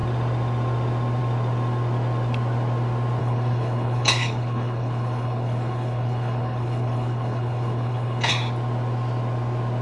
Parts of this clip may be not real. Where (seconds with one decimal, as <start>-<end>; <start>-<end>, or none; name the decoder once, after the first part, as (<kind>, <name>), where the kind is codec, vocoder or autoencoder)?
3.2-8.3 (codec, HILCodec)